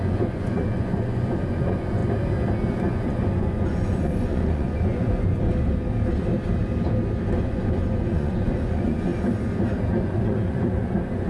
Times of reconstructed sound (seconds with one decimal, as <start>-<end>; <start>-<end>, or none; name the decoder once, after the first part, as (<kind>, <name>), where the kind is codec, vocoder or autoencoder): 0.0-2.0 (vocoder, Vocos); 2.8-5.5; 7.4-9.1; 9.9-11.3